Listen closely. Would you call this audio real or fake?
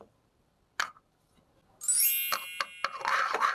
real